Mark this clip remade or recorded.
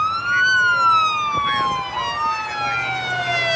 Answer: recorded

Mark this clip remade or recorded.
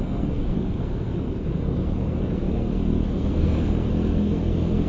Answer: remade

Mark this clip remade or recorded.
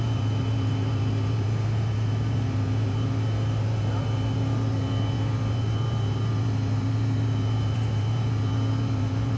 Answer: remade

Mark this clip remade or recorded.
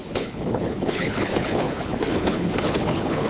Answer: remade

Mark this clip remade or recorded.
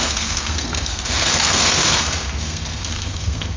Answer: remade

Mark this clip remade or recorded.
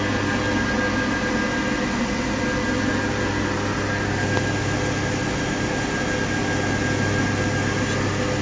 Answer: recorded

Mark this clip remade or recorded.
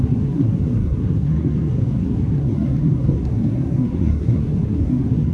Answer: remade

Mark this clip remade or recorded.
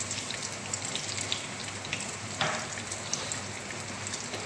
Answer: recorded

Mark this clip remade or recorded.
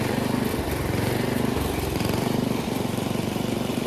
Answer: remade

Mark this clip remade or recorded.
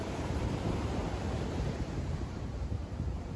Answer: remade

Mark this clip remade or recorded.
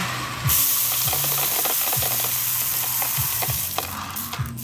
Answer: recorded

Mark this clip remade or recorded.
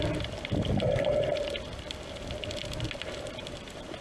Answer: recorded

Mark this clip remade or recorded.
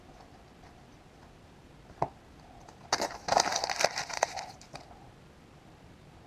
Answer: recorded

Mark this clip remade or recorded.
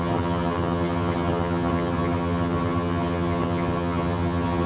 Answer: remade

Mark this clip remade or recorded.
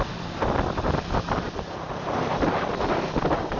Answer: recorded